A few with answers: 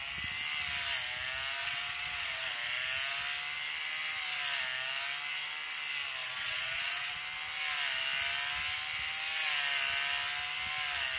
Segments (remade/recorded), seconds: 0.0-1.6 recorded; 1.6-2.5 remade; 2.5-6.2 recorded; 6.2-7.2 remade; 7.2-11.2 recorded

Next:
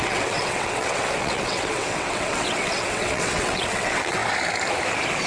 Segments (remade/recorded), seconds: 0.0-4.2 remade; 4.2-5.3 recorded

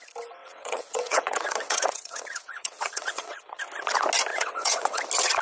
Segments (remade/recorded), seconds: 0.0-0.4 recorded; 0.4-3.6 remade; 3.6-4.3 recorded; 4.3-5.0 remade; 5.0-5.4 recorded

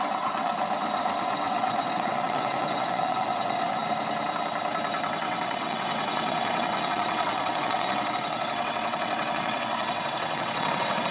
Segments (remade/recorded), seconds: 0.0-0.5 remade; 0.5-1.2 recorded; 1.2-3.8 remade; 3.8-5.2 recorded; 5.2-11.1 remade

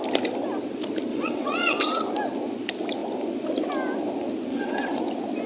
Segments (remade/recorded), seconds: 0.0-1.1 recorded; 1.1-2.0 remade; 2.0-4.5 recorded; 4.5-5.0 remade; 5.0-5.5 recorded

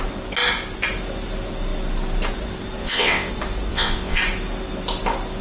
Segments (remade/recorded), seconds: 0.0-2.8 recorded; 2.8-3.3 remade; 3.3-3.7 recorded; 3.7-4.2 remade; 4.2-5.4 recorded

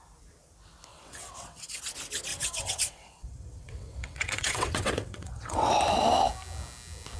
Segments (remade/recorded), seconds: 0.0-0.9 recorded; 0.9-1.8 remade; 1.8-2.3 recorded; 2.3-5.7 remade; 5.7-7.2 recorded

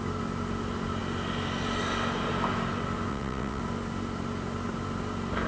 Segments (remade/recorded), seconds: 0.0-3.1 recorded; 3.1-3.6 remade; 3.6-5.5 recorded